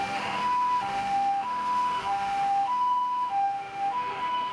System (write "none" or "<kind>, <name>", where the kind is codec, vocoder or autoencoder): autoencoder, DAC-VAE